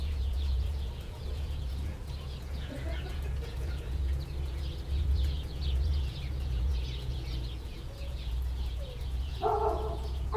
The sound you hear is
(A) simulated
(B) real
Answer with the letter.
A